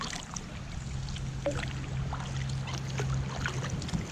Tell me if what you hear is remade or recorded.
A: recorded